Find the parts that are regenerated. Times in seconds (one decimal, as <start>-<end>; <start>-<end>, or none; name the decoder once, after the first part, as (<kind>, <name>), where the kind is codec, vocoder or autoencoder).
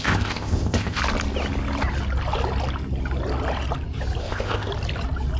0.0-1.0 (codec, ZipCodec); 4.2-4.7